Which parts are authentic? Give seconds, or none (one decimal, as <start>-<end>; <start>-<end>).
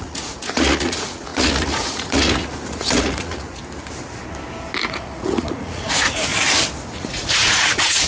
3.6-4.8; 6.3-6.9